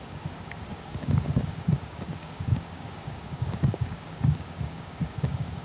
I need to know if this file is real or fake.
fake